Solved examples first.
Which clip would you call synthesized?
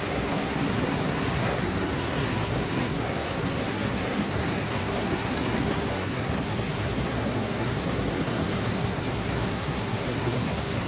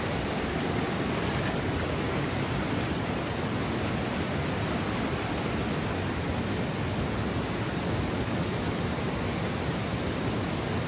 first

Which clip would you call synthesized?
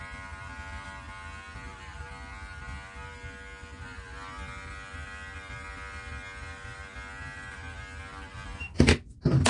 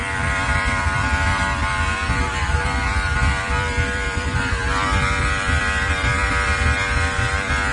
second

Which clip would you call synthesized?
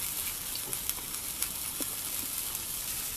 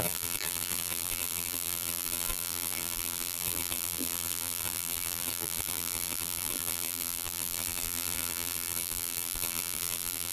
second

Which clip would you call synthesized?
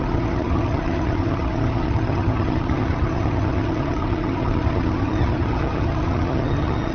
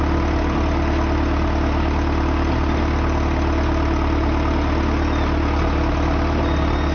first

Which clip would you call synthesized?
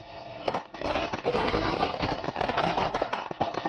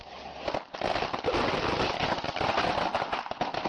first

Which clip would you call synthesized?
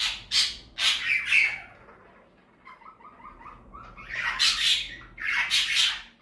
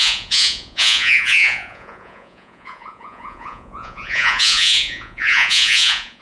second